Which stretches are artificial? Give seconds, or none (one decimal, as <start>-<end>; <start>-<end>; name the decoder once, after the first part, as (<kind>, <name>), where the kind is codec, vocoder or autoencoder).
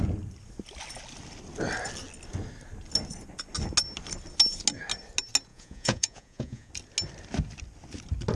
5.5-6.7 (vocoder, Vocos)